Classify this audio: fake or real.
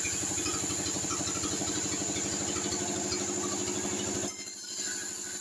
real